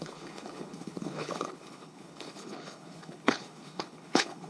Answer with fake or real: fake